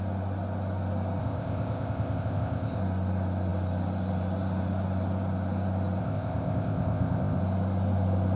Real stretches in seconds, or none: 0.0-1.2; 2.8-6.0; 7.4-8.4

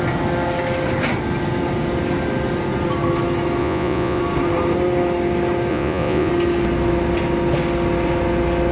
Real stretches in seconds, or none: 0.0-3.6; 4.2-5.7; 6.3-8.7